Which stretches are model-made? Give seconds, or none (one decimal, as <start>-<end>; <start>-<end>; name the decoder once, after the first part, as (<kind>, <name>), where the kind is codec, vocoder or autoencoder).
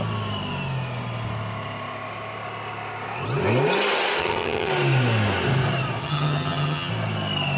4.2-4.7 (vocoder, HiFi-GAN); 6.0-6.9